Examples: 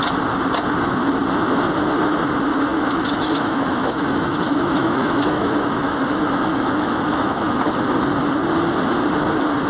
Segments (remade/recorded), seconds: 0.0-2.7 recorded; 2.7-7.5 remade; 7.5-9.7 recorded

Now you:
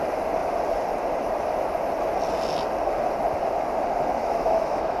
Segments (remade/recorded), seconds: 0.0-4.2 recorded; 4.2-5.0 remade